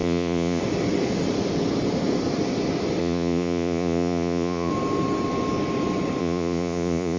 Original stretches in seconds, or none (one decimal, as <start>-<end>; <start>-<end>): 0.6-3.0; 4.7-6.2